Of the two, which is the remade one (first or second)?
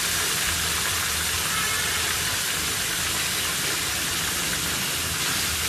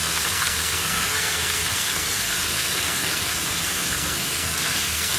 second